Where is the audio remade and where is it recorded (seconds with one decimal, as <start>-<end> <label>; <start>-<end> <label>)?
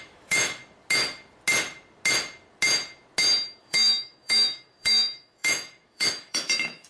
0.0-0.6 remade; 0.6-3.6 recorded; 3.6-6.9 remade